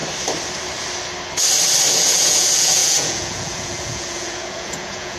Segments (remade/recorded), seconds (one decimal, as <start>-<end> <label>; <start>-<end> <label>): 0.0-1.9 recorded; 1.9-5.2 remade